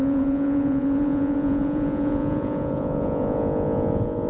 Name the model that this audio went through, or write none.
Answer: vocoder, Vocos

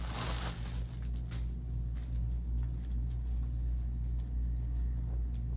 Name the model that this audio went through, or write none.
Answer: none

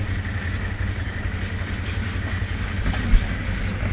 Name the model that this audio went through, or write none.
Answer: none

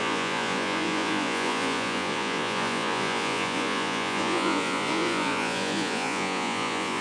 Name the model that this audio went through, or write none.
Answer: vocoder, Vocos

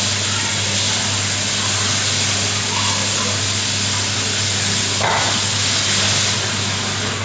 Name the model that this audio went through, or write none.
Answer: none